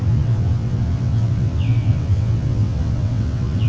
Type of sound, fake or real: fake